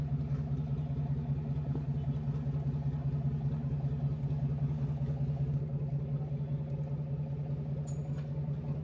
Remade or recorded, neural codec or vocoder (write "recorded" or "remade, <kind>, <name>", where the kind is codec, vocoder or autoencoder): recorded